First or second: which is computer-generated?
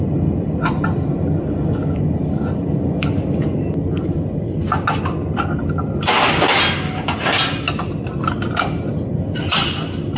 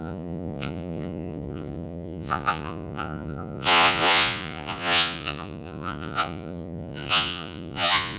second